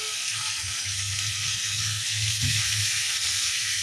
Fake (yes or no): yes